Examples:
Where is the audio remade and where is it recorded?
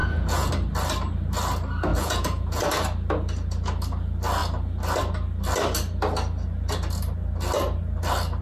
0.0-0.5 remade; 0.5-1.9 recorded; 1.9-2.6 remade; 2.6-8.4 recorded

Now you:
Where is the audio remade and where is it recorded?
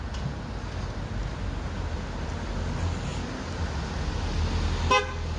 0.0-5.4 recorded